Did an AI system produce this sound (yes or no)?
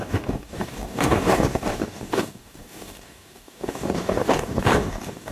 yes